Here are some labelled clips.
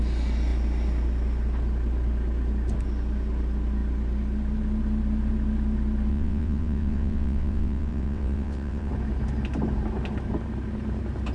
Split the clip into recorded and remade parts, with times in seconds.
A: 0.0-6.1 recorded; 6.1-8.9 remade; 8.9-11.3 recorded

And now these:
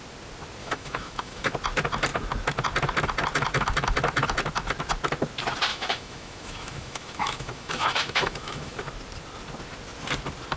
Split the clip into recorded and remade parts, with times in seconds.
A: 0.0-0.6 recorded; 0.6-1.5 remade; 1.5-5.7 recorded; 5.7-8.8 remade; 8.8-10.6 recorded